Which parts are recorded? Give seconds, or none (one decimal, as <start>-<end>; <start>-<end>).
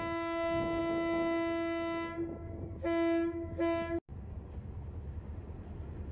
0.0-6.1